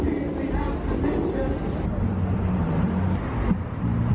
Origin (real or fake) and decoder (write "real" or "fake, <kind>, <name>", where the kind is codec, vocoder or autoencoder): real